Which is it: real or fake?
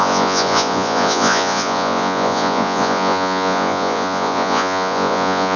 fake